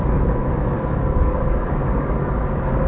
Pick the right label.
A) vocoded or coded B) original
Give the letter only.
A